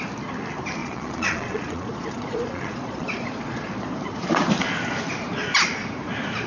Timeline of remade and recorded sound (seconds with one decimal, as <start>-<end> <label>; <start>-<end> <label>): 0.0-0.8 recorded; 0.8-3.7 remade; 3.7-6.5 recorded